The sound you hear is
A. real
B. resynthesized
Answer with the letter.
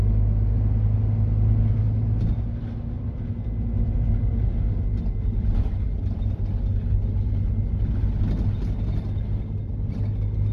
A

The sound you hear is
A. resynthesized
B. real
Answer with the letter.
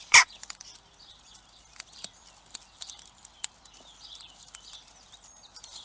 A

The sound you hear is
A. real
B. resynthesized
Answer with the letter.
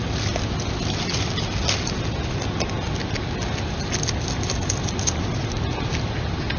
A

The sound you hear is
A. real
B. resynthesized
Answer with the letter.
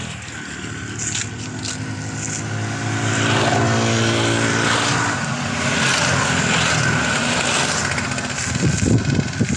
A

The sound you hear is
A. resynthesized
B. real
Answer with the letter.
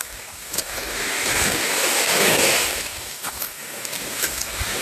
A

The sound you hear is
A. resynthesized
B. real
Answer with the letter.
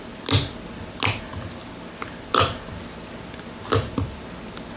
B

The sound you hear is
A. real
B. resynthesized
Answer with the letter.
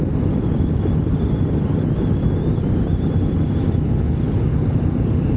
A